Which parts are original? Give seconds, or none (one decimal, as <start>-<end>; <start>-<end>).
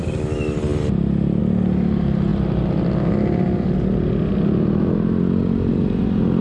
0.0-6.4